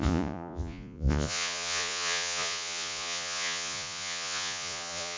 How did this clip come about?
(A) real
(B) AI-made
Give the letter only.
B